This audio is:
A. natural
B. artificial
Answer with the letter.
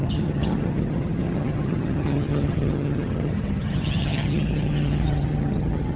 B